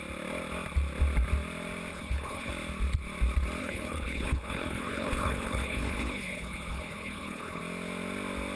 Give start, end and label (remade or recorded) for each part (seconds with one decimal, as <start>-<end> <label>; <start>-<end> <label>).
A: 0.0-1.9 recorded; 1.9-2.5 remade; 2.5-3.6 recorded; 3.6-7.6 remade; 7.6-8.6 recorded